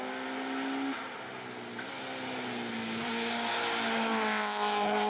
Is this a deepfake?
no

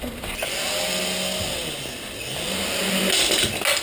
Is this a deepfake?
no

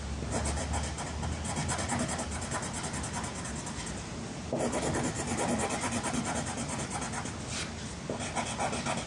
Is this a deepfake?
no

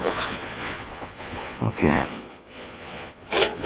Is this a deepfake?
yes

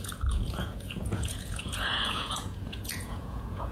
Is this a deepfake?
yes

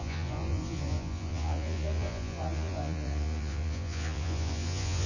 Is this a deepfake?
yes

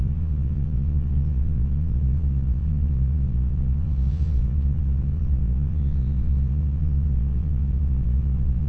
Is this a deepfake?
yes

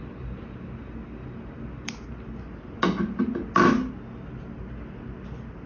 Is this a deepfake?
no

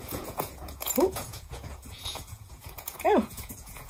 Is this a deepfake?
yes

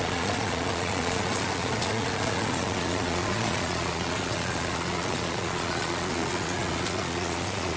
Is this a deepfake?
yes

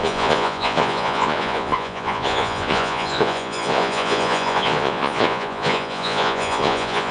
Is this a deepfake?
yes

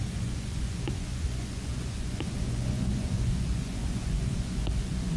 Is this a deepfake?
yes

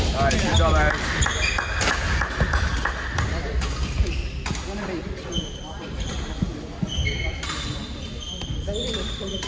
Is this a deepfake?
no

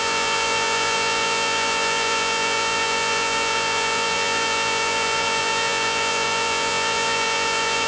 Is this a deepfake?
yes